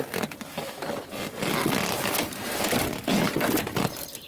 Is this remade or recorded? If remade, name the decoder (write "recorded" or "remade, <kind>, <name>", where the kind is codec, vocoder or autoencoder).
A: recorded